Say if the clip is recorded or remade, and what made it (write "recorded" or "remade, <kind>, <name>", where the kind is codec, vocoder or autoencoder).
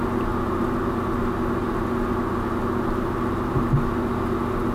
recorded